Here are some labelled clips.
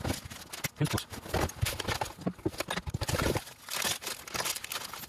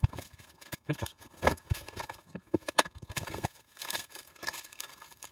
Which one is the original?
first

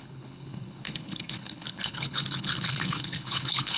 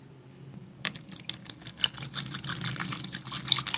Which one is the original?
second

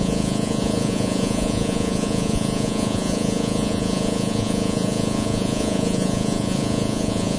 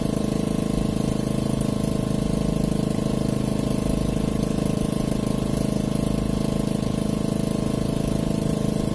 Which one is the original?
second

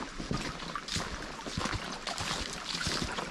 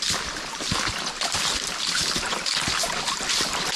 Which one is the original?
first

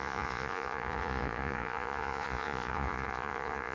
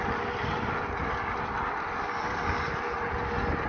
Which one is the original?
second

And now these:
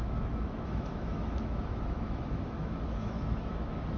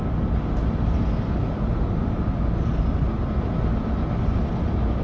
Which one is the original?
second